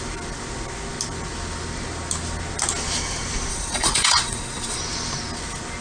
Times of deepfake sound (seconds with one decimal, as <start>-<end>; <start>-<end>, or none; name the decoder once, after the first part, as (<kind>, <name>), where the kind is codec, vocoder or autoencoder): 3.5-4.8 (vocoder, Vocos)